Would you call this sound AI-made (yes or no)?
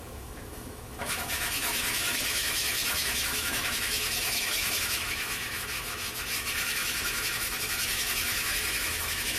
yes